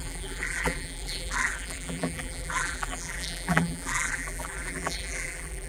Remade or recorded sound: remade